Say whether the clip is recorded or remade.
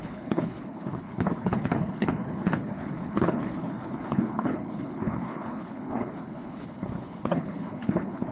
remade